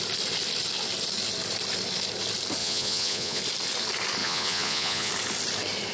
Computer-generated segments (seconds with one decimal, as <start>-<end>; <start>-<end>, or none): 2.6-3.4; 4.2-5.1